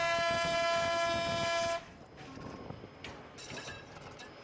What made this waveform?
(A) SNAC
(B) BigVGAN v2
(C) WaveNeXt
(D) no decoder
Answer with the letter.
D